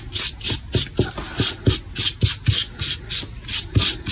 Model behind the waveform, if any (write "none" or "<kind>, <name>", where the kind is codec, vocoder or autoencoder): none